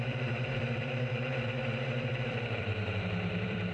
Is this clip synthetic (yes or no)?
yes